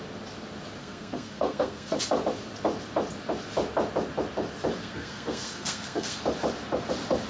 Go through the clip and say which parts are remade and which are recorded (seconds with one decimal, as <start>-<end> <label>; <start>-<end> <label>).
0.0-0.8 recorded; 0.8-2.0 remade; 2.0-4.8 recorded; 4.8-6.2 remade; 6.2-7.3 recorded